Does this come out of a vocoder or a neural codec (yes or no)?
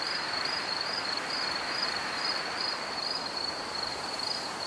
yes